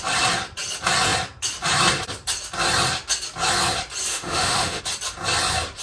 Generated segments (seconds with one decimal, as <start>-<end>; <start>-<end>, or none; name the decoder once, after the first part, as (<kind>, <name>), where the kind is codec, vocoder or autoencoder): 4.1-4.8 (autoencoder, DAC-VAE)